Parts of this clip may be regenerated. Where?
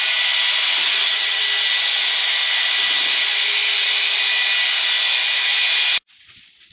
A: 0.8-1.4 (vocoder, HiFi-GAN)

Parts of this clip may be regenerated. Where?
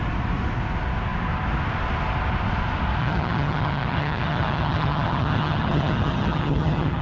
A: 3.0-7.0 (vocoder, HiFi-GAN)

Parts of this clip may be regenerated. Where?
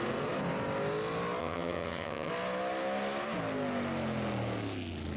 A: 1.4-2.3 (vocoder, HiFi-GAN)